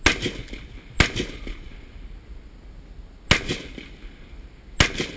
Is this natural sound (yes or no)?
yes